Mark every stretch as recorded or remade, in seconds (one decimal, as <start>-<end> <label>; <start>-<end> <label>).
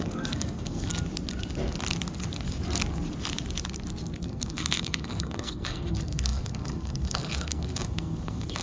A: 0.0-0.9 remade; 0.9-4.2 recorded; 4.2-8.6 remade